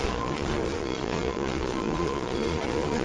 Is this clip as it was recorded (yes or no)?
no